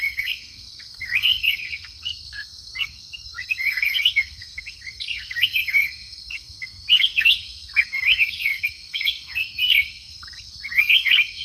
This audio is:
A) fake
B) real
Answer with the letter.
A